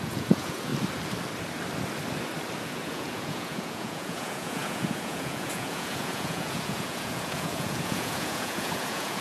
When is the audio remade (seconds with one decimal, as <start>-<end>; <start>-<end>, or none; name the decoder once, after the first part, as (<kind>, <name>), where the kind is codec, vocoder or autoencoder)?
0.0-0.7 (vocoder, Vocos); 2.6-9.2